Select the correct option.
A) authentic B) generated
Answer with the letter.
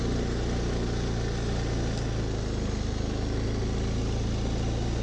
A